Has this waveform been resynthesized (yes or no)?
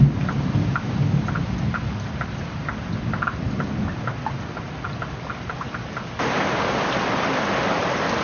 no